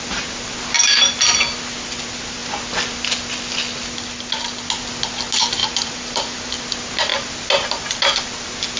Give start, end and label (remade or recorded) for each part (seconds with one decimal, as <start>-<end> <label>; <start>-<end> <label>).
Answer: 0.0-5.6 recorded; 5.6-6.6 remade; 6.6-8.8 recorded